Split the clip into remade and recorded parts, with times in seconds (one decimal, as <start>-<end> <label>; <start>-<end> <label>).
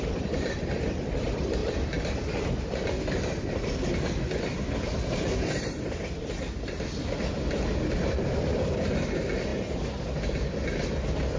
0.0-9.5 remade; 9.5-10.0 recorded; 10.0-11.4 remade